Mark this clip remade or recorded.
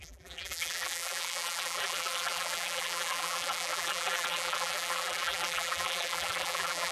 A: remade